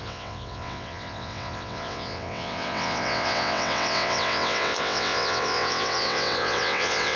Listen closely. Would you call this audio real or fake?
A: fake